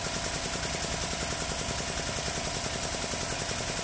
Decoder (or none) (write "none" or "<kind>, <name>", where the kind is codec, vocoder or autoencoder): none